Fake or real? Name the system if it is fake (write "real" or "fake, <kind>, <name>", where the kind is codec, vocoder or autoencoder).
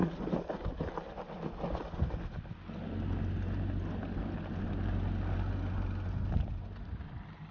real